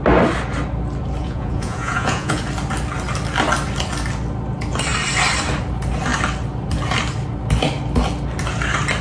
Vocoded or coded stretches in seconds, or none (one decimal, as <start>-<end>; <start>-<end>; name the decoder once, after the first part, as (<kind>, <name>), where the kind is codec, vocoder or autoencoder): 1.2-2.4 (vocoder, Vocos)